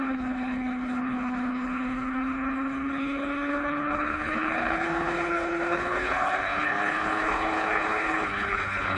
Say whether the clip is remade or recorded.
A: remade